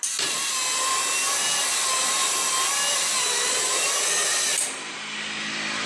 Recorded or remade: recorded